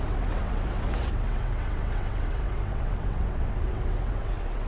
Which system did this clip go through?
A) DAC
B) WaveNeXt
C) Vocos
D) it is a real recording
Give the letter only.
B